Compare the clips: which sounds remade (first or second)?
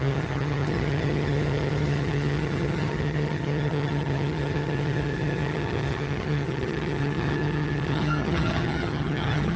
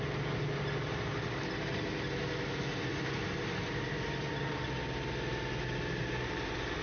first